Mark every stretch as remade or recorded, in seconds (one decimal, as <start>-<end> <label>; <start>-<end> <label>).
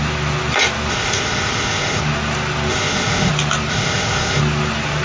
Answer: 0.0-0.9 recorded; 0.9-2.0 remade; 2.0-2.7 recorded; 2.7-3.3 remade; 3.3-3.7 recorded; 3.7-4.4 remade; 4.4-5.0 recorded